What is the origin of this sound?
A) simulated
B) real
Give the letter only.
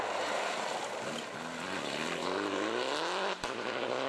B